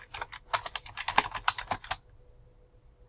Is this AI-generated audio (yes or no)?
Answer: no